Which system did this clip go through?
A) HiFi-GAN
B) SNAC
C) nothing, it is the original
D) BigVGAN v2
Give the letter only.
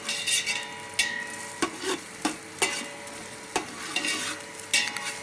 C